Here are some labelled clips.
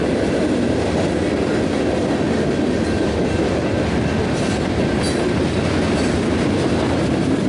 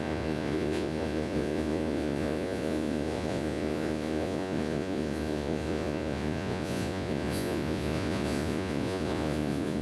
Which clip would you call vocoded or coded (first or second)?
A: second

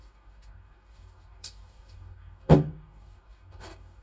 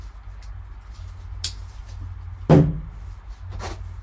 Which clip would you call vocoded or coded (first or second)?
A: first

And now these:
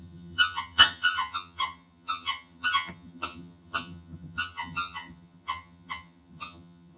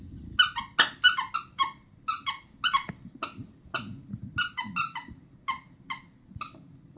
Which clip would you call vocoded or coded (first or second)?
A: first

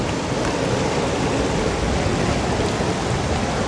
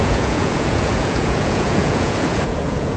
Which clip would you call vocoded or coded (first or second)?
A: second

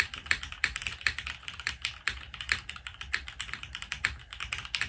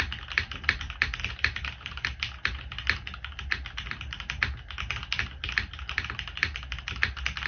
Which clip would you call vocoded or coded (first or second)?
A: first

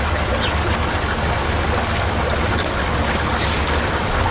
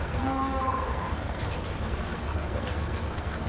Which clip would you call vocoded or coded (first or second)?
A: second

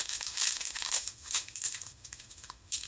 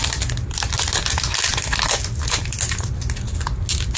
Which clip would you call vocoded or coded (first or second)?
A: first